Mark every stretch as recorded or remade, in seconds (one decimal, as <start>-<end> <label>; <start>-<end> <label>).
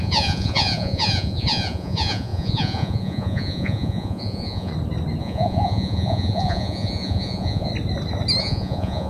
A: 0.0-4.7 remade; 4.7-5.2 recorded; 5.2-7.7 remade; 7.7-8.4 recorded; 8.4-9.1 remade